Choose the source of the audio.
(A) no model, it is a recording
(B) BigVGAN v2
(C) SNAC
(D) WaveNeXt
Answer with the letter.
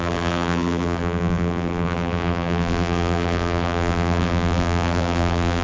B